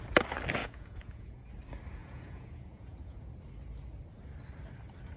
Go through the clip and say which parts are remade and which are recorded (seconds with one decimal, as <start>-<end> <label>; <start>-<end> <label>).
0.0-0.6 recorded; 0.6-1.5 remade; 1.5-2.0 recorded; 2.0-3.3 remade; 3.3-5.2 recorded

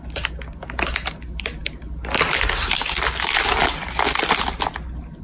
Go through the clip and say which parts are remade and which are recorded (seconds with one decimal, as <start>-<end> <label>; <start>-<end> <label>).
0.0-5.2 recorded